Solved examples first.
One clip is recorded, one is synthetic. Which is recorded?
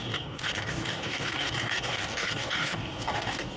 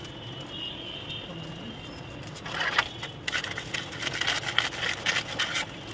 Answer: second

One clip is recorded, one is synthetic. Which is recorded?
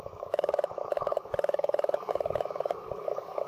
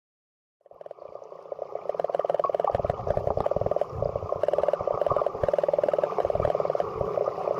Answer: second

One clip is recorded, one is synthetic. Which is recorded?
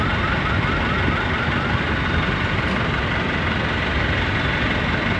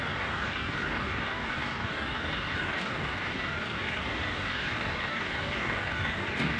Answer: first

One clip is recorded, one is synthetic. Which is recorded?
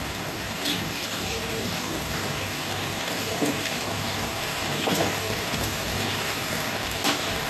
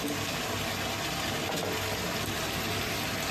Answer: second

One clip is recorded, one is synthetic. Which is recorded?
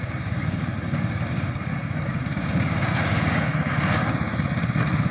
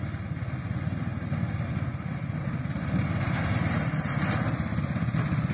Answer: second